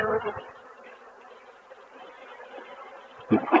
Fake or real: fake